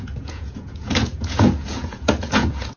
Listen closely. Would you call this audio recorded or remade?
remade